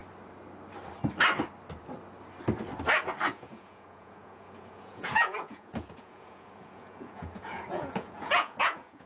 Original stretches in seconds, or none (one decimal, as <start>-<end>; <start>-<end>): 0.0-3.3